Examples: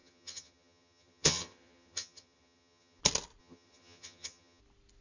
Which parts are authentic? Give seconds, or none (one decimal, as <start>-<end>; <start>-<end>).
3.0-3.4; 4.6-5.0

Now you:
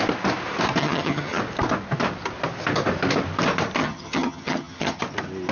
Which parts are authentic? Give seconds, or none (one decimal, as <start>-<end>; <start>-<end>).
0.0-0.8; 1.4-3.8; 5.0-5.5

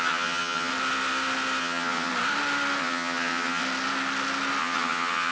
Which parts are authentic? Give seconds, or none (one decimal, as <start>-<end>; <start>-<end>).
0.7-1.6; 2.1-2.8; 3.6-4.6

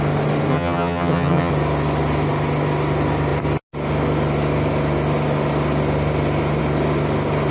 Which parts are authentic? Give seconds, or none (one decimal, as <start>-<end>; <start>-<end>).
0.0-0.5; 1.5-7.5

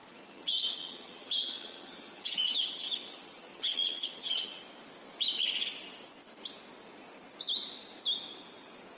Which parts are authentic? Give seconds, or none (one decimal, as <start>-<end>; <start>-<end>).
4.6-9.0

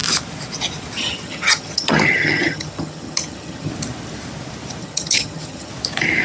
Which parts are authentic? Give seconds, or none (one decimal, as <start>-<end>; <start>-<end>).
0.0-1.0; 3.7-4.8; 5.7-6.2

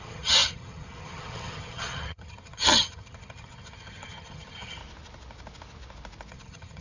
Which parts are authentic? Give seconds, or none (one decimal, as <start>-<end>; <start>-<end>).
4.8-6.3